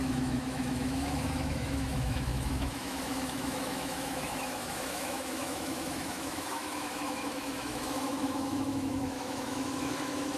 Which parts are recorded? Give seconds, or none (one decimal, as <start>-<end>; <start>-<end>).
none

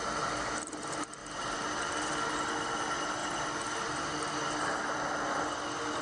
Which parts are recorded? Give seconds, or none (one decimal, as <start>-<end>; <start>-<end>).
0.0-6.0

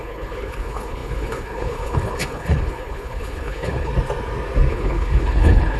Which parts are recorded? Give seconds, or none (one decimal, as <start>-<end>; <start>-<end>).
3.9-4.7